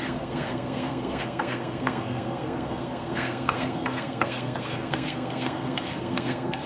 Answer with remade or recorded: remade